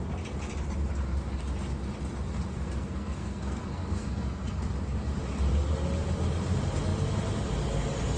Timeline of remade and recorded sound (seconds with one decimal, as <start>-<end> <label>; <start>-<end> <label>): 0.0-2.5 recorded; 2.5-4.7 remade; 4.7-8.2 recorded

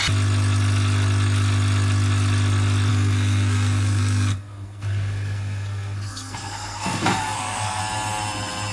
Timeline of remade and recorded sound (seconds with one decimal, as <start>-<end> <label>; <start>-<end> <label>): 0.0-2.9 recorded; 2.9-7.8 remade; 7.8-8.7 recorded

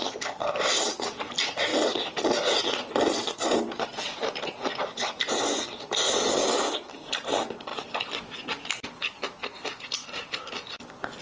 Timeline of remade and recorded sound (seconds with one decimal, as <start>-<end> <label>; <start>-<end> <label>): 0.0-1.7 remade; 1.7-2.6 recorded; 2.6-11.2 remade

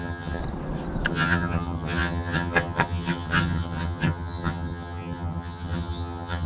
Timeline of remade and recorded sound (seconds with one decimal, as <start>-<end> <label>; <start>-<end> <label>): 0.0-0.4 remade; 0.4-1.1 recorded; 1.1-6.5 remade